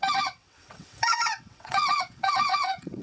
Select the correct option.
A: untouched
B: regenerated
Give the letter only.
B